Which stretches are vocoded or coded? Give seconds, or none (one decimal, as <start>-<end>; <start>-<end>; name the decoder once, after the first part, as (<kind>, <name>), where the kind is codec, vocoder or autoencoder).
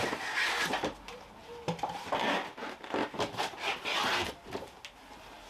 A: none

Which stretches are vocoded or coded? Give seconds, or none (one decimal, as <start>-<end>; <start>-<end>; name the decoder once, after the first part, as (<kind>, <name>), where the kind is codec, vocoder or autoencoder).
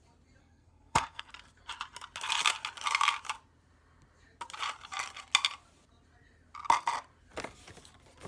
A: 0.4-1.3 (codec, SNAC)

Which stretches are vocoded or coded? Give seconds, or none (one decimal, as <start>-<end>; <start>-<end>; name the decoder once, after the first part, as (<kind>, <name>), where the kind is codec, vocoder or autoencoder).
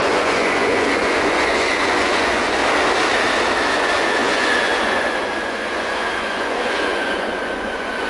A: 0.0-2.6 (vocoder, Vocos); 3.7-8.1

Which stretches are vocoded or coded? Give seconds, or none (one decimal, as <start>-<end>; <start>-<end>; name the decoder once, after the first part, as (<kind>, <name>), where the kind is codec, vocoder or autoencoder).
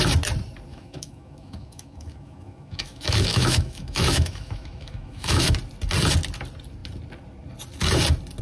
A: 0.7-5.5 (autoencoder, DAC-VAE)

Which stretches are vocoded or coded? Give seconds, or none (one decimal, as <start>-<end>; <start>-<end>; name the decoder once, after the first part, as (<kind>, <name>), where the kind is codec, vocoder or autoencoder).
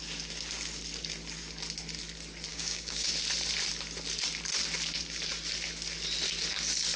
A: 2.5-3.1 (codec, DAC)